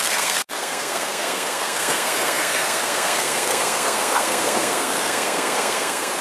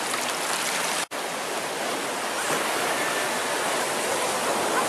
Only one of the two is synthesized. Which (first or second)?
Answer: first